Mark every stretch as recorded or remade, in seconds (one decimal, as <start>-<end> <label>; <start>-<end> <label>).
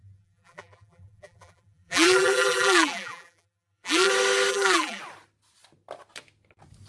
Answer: 0.0-4.1 remade; 4.1-4.5 recorded; 4.5-5.0 remade; 5.0-6.9 recorded